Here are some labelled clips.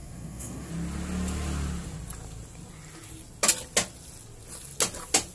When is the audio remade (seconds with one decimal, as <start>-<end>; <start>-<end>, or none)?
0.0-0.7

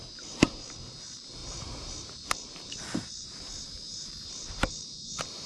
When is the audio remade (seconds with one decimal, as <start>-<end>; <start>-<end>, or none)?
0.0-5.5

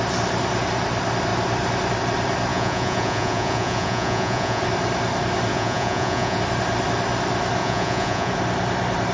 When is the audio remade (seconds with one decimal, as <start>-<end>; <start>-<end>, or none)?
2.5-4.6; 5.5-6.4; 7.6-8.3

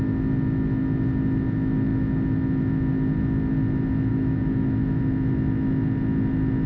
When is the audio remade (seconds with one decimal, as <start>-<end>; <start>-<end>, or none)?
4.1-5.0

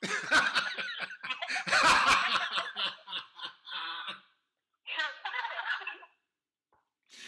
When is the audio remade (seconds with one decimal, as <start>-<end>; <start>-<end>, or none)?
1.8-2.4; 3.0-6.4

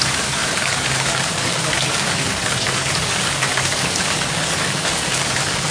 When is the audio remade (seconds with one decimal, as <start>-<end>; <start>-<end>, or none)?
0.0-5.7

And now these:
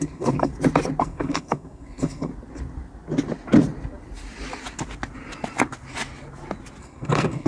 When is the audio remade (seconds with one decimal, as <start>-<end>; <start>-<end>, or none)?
0.0-0.5; 1.0-2.3; 6.8-7.5